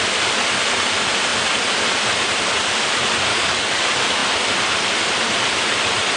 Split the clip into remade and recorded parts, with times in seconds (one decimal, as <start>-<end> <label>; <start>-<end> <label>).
0.0-3.3 recorded; 3.3-3.8 remade; 3.8-6.2 recorded